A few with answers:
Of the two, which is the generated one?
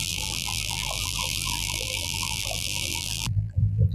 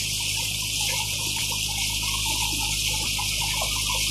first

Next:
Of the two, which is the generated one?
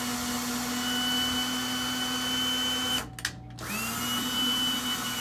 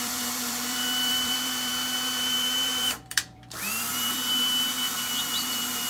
second